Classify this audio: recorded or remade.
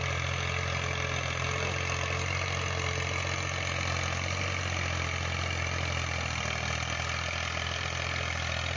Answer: recorded